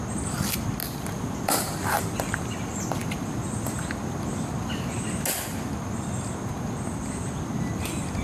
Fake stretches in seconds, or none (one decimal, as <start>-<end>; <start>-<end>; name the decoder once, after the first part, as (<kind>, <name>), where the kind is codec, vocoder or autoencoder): 0.8-2.5 (vocoder, BigVGAN v2)